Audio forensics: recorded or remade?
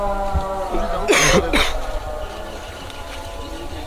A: recorded